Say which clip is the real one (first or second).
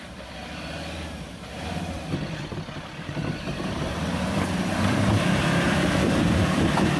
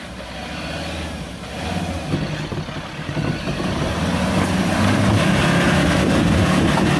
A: second